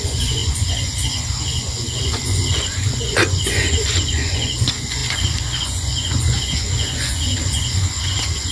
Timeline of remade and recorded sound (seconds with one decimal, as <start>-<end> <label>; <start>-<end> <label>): 0.0-8.5 remade